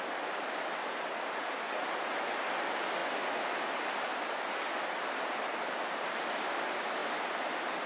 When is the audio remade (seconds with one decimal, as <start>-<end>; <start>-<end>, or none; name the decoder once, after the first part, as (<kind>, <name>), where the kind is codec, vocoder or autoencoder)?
none